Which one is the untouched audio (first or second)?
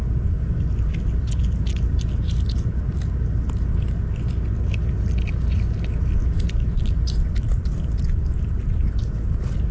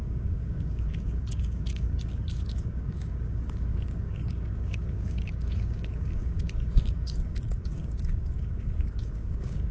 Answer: first